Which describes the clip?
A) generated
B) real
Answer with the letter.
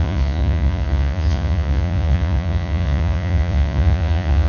A